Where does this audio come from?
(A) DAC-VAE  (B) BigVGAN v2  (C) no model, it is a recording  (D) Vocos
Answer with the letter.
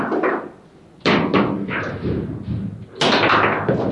C